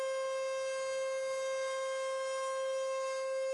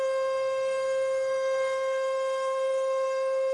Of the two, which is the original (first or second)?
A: first